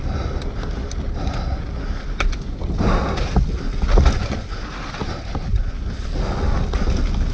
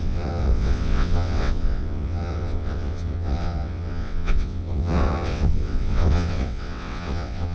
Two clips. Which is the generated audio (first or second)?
second